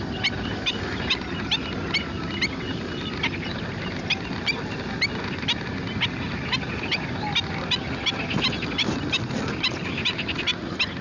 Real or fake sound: real